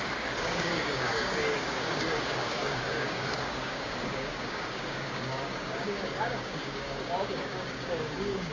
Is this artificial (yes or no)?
yes